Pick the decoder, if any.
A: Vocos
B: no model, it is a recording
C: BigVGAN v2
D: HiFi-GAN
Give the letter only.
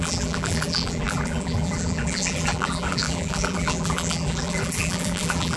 C